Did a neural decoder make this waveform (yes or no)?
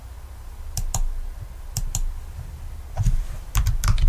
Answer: no